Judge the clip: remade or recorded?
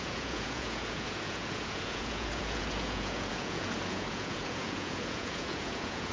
remade